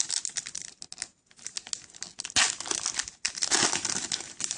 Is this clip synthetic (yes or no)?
no